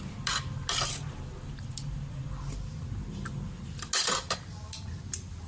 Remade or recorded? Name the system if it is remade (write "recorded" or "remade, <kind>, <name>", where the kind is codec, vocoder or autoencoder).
recorded